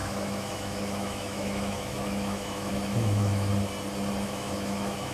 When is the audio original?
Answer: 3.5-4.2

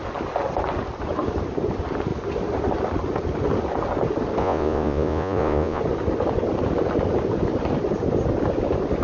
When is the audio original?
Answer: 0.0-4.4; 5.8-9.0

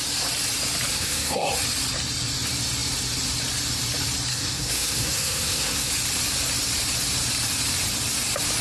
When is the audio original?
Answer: 0.0-0.9; 1.5-4.3; 5.9-8.6

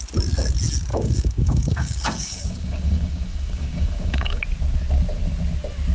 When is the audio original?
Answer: 0.0-0.9; 4.4-5.9